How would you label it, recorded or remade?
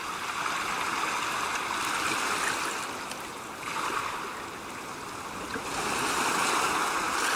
recorded